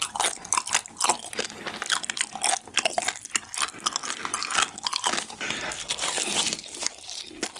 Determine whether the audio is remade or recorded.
recorded